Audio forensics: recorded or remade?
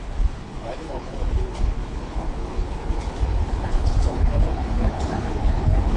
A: remade